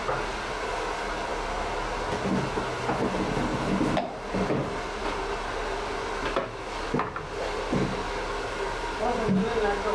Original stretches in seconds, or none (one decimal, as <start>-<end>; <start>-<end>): 0.0-9.9